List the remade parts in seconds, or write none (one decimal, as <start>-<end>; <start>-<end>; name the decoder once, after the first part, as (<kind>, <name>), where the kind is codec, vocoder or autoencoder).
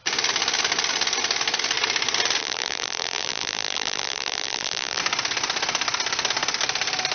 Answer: 2.4-5.0 (vocoder, BigVGAN v2)